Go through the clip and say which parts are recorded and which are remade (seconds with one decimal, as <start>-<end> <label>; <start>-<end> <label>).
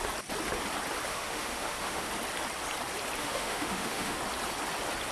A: 0.0-1.1 recorded; 1.1-2.1 remade; 2.1-3.2 recorded; 3.2-4.2 remade; 4.2-5.1 recorded